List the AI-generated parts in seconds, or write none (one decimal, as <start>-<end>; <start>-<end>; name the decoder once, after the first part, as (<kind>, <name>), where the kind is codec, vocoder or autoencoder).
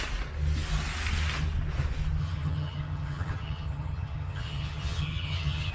2.2-5.7 (vocoder, HiFi-GAN)